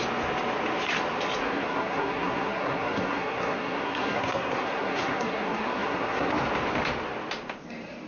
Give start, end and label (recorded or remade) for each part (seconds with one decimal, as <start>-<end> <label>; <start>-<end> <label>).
0.0-1.4 recorded; 1.4-6.3 remade; 6.3-8.1 recorded